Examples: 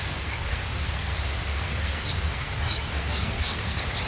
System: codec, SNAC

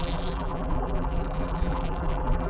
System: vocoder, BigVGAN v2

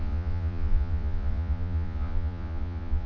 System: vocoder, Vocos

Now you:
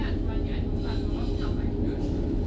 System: none